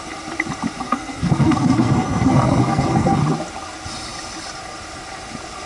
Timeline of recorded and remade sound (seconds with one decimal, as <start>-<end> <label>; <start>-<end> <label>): 0.0-0.8 recorded; 0.8-3.2 remade; 3.2-5.7 recorded